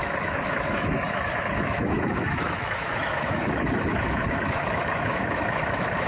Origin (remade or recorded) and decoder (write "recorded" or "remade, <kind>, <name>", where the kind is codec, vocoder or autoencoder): remade, autoencoder, DAC-VAE